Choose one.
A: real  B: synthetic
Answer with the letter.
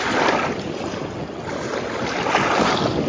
A